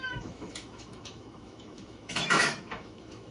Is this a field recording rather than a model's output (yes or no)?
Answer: no